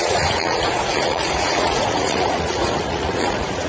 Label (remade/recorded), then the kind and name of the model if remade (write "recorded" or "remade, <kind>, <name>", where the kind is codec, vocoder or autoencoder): remade, vocoder, Vocos